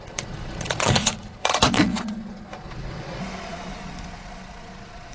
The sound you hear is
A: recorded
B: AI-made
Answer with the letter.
B